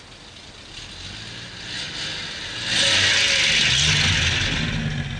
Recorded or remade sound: recorded